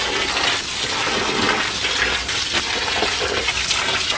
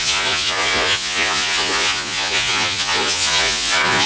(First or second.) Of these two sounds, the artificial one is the second